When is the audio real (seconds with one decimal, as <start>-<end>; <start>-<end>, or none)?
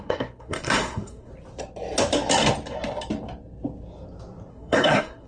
1.3-4.5